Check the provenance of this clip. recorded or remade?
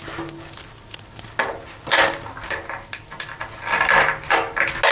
recorded